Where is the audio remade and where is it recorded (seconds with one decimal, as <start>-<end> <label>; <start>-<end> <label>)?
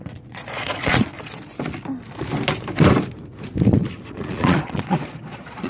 0.0-1.5 remade; 1.5-3.7 recorded; 3.7-5.7 remade